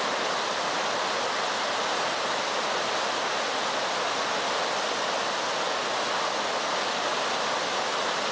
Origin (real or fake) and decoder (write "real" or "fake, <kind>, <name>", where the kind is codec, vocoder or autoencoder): real